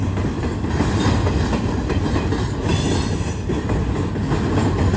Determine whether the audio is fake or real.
real